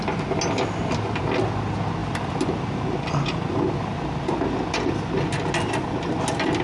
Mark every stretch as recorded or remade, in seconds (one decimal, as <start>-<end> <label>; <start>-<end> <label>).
0.0-6.6 recorded